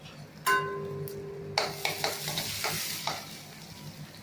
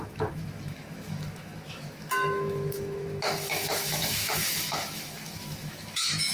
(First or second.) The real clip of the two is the first